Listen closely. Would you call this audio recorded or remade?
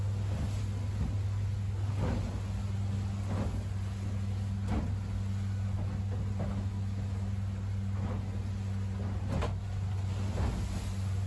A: recorded